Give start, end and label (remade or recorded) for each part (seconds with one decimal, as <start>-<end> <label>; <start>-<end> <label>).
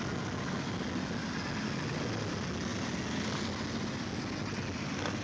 0.0-5.2 recorded